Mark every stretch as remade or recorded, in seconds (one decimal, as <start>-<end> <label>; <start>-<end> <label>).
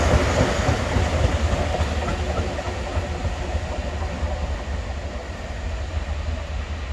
0.0-6.9 recorded